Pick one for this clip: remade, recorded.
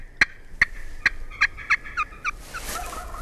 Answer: recorded